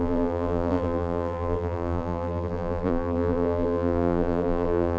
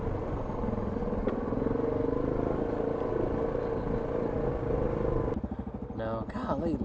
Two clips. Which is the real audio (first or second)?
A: second